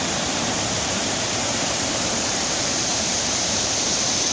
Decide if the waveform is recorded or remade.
remade